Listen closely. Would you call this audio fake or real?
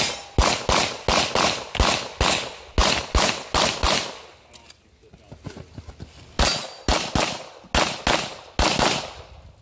real